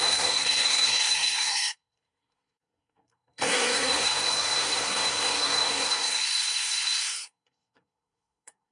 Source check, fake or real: fake